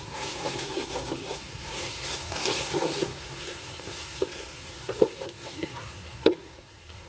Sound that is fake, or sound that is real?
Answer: fake